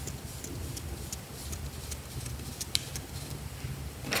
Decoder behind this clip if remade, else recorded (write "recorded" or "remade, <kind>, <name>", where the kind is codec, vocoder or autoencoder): recorded